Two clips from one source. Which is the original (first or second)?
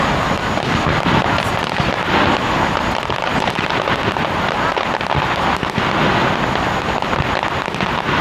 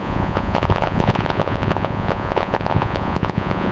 first